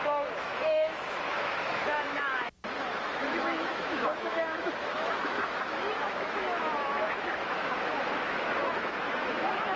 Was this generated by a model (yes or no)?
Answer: yes